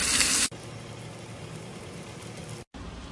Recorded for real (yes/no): yes